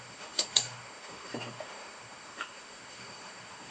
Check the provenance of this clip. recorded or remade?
remade